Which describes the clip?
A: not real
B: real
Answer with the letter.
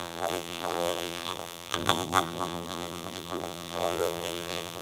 A